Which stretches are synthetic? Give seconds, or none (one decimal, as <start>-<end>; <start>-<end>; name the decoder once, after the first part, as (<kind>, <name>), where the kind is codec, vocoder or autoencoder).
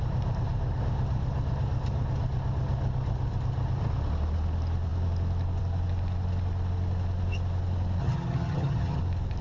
8.0-9.0 (vocoder, HiFi-GAN)